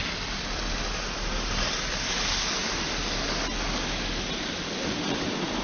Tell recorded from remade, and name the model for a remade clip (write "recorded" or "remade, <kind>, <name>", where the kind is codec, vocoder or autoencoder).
recorded